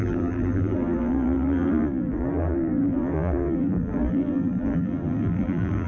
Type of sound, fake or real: fake